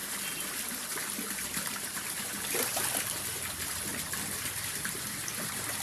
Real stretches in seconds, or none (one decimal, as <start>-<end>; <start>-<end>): 3.9-4.6